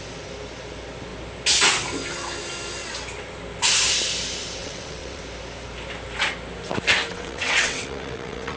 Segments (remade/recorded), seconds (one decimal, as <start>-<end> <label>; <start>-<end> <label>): 0.0-4.6 recorded; 4.6-5.2 remade; 5.2-7.1 recorded; 7.1-8.6 remade